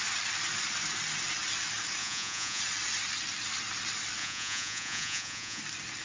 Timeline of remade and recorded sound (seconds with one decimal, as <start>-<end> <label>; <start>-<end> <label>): 0.0-2.0 recorded; 2.0-2.6 remade; 2.6-4.2 recorded; 4.2-5.6 remade; 5.6-6.0 recorded

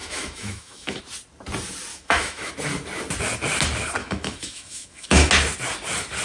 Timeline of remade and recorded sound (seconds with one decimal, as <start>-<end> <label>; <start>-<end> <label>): 0.0-1.0 remade; 1.0-1.9 recorded; 1.9-2.5 remade; 2.5-4.0 recorded; 4.0-5.3 remade; 5.3-6.2 recorded

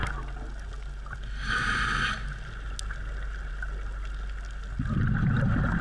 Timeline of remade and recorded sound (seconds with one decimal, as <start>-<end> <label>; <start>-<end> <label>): 0.0-5.8 recorded

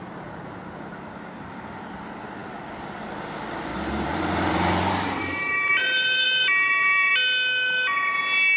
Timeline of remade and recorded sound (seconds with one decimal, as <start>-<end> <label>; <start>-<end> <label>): 0.0-3.7 recorded; 3.7-7.1 remade; 7.1-8.6 recorded

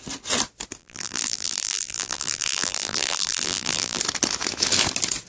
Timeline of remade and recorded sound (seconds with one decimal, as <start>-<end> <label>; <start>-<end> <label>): 0.0-0.8 recorded; 0.8-4.0 remade; 4.0-5.3 recorded

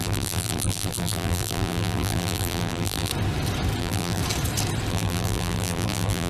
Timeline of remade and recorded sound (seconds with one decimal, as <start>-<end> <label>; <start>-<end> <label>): 0.0-3.1 remade; 3.1-3.8 recorded; 3.8-4.2 remade; 4.2-4.9 recorded; 4.9-6.3 remade

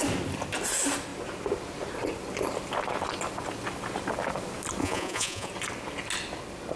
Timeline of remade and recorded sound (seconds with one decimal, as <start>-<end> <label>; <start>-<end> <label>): 0.0-4.8 recorded; 4.8-5.5 remade; 5.5-6.8 recorded